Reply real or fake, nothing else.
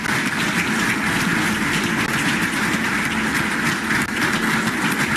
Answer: real